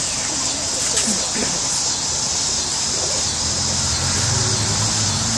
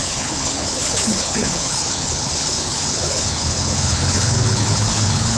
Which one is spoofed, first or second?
second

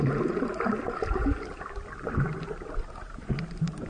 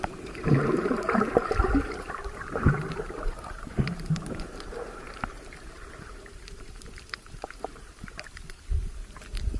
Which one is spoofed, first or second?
second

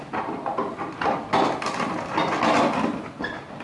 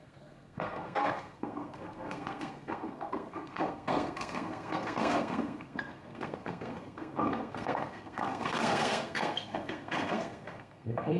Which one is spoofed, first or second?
second